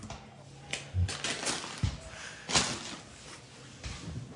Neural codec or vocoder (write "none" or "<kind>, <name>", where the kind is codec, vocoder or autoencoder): none